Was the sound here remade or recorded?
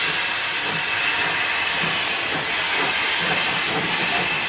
recorded